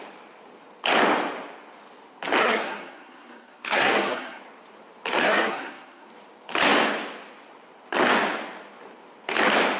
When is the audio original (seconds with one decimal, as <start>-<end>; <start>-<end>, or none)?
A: 0.0-2.4; 4.4-5.2; 6.1-9.8